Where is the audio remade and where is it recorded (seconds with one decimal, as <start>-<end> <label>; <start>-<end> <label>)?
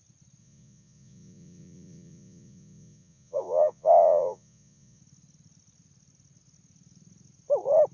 0.0-0.4 recorded; 0.4-5.0 remade; 5.0-7.9 recorded